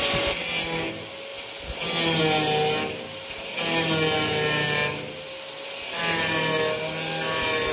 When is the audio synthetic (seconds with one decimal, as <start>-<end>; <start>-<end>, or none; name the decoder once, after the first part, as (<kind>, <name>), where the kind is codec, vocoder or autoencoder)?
none